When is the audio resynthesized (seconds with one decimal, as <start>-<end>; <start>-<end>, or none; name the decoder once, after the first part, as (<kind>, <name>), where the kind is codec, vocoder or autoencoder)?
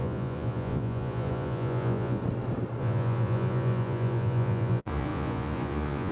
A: 0.0-2.2 (vocoder, Vocos); 2.8-6.1